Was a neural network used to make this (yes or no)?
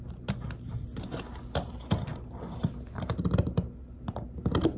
no